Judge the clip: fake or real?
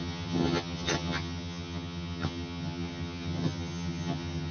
fake